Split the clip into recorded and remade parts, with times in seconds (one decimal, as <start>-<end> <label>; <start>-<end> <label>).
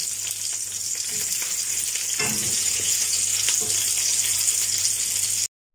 0.0-2.4 recorded; 2.4-3.2 remade; 3.2-5.7 recorded